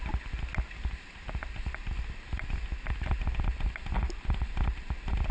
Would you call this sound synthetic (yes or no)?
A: no